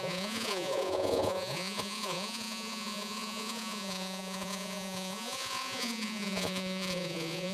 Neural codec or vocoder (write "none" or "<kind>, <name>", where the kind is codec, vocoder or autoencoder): vocoder, Vocos